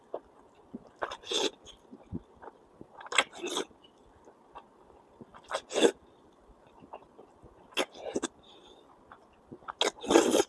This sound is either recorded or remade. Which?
recorded